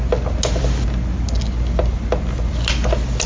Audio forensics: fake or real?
real